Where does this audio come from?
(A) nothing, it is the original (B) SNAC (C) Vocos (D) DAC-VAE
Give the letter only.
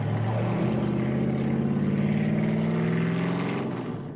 A